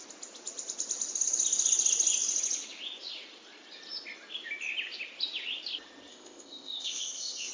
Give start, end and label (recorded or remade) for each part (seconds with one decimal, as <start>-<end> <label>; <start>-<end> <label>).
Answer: 0.0-6.1 recorded; 6.1-7.5 remade